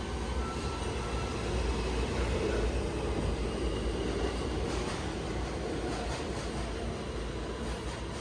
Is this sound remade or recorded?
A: recorded